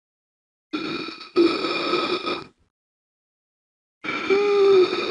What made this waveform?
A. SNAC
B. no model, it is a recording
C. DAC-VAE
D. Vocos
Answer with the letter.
B